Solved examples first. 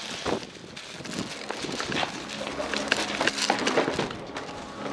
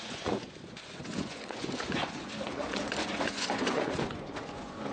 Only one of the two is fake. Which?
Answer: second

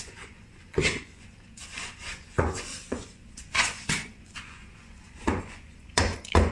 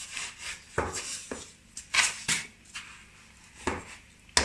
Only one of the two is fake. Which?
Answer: first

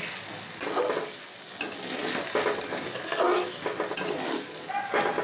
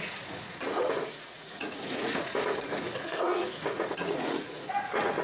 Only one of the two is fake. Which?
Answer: second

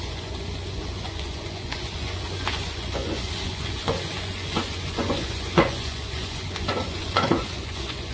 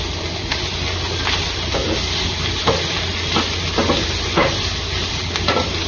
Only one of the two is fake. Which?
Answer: first